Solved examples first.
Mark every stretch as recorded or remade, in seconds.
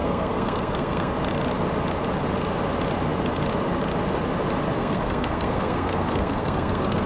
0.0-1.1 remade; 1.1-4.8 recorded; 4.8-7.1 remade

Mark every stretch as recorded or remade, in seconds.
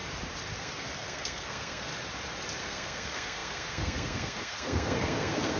0.0-0.6 recorded; 0.6-1.9 remade; 1.9-2.6 recorded; 2.6-5.6 remade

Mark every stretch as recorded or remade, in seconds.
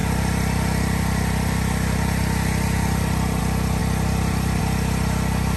0.0-3.4 remade; 3.4-3.8 recorded; 3.8-4.6 remade; 4.6-5.6 recorded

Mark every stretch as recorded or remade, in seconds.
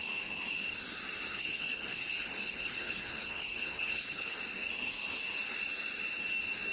0.0-1.3 recorded; 1.3-4.4 remade; 4.4-6.7 recorded